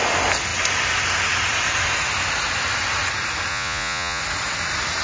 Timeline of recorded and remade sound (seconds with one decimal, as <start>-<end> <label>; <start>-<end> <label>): 0.0-3.5 recorded; 3.5-4.2 remade; 4.2-5.0 recorded